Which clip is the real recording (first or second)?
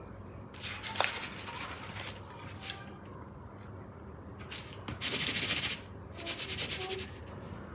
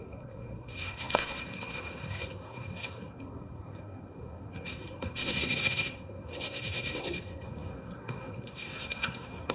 first